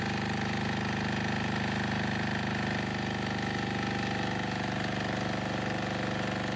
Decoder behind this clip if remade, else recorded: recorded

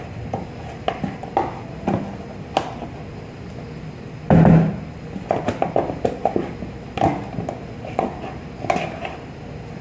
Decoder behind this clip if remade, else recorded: recorded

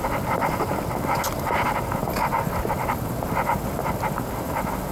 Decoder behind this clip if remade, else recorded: recorded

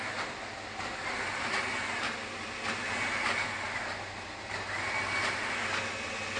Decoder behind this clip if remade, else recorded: recorded